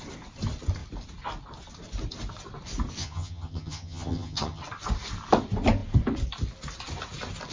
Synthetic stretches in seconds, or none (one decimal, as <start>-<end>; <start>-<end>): 3.0-4.6